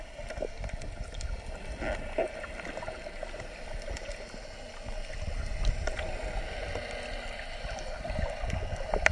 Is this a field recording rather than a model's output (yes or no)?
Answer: yes